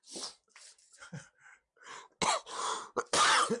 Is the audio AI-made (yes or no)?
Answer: no